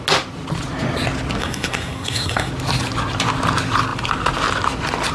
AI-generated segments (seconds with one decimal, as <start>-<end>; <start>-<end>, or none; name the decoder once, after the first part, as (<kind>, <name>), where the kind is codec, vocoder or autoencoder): 1.4-2.5 (codec, SNAC)